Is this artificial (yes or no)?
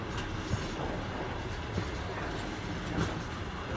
no